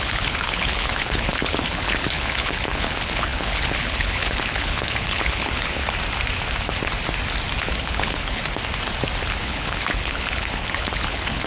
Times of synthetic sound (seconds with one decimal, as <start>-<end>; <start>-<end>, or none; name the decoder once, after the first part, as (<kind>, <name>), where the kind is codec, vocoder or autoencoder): 0.0-5.8 (codec, HILCodec); 7.6-8.4; 9.4-11.5